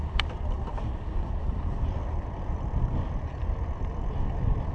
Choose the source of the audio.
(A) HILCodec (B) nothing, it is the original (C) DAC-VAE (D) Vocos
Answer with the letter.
B